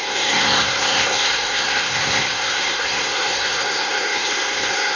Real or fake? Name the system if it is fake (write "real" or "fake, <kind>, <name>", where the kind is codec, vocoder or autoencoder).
fake, codec, SNAC